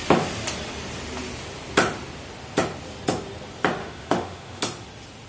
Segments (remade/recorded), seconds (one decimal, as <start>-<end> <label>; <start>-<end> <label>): 0.0-3.8 recorded; 3.8-4.6 remade; 4.6-5.3 recorded